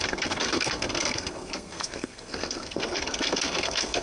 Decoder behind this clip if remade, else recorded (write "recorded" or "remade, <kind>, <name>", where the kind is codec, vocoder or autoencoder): remade, codec, SNAC